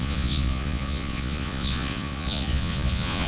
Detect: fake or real fake